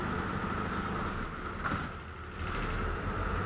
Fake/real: fake